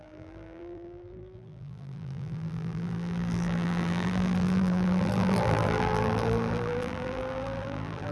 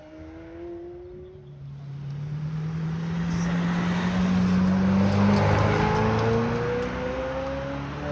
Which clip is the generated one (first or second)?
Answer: first